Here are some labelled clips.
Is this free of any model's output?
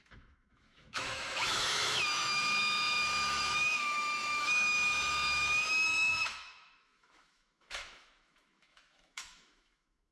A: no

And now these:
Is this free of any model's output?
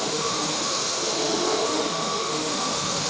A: no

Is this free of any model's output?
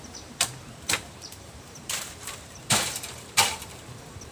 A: no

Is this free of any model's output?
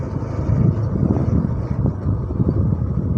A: yes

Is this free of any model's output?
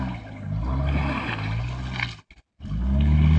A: yes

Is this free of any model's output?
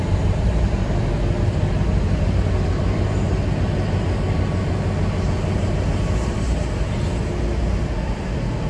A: yes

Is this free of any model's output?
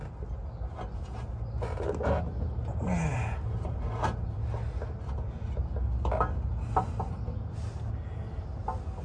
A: yes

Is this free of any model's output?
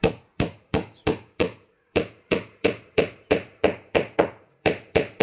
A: no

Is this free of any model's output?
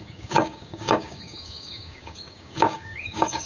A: no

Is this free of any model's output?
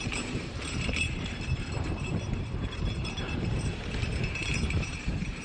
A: no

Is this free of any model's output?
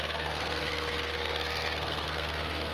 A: no